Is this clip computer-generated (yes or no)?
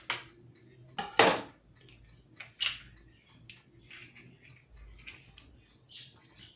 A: no